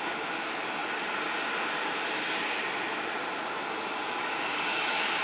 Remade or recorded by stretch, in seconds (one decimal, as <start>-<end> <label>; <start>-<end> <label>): 0.0-0.8 remade; 0.8-3.3 recorded; 3.3-5.2 remade